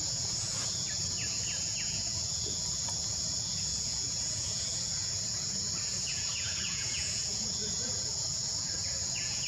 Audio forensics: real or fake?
fake